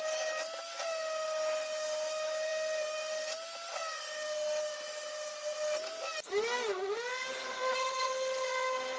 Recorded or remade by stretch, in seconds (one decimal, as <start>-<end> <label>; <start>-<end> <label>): 0.0-7.1 recorded; 7.1-7.7 remade; 7.7-9.0 recorded